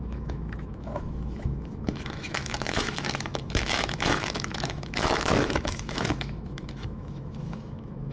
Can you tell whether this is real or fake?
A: fake